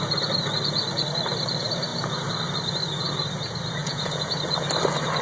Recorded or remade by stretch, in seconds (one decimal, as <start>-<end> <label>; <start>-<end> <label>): 0.0-3.8 recorded; 3.8-4.3 remade; 4.3-5.2 recorded